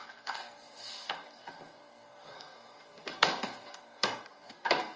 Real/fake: fake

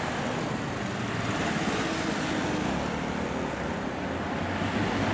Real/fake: real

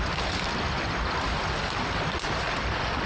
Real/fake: real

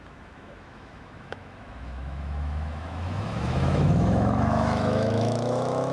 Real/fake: fake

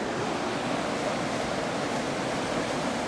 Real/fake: real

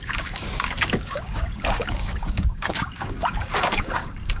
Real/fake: fake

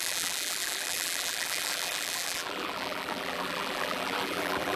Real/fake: fake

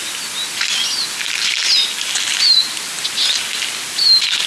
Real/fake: real